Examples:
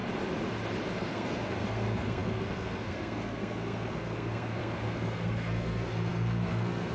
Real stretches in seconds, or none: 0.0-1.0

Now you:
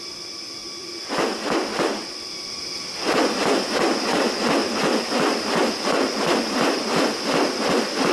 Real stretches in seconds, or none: 0.0-8.1